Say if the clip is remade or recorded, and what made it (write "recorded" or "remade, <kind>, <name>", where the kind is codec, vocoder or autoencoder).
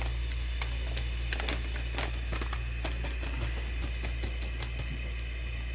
recorded